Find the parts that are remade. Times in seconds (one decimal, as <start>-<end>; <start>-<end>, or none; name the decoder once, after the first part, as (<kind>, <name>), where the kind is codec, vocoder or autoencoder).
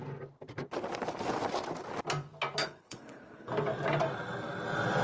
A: 2.6-3.5 (codec, HILCodec)